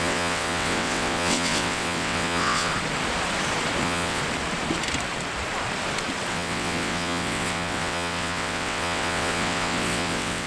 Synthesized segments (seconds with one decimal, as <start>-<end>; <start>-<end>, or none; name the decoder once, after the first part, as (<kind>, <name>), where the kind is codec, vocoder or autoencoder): 0.0-2.7 (vocoder, WaveNeXt); 3.8-4.2; 6.3-10.5